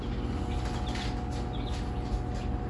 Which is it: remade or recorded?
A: recorded